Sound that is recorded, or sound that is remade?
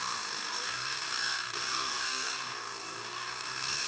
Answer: remade